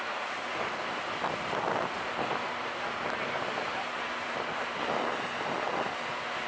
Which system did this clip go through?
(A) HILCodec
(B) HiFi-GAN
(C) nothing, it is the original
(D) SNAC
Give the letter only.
C